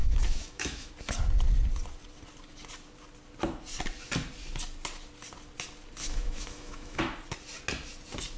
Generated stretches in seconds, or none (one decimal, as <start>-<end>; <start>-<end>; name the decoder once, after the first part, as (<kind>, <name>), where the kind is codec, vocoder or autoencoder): 0.0-0.9 (autoencoder, DAC-VAE); 6.0-7.0